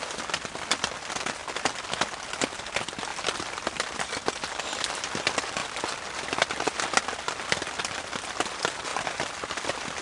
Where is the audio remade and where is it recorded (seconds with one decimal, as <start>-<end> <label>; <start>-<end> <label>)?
0.0-1.4 recorded; 1.4-2.1 remade; 2.1-3.1 recorded; 3.1-3.8 remade; 3.8-10.0 recorded